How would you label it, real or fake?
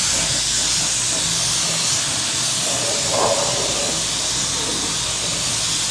real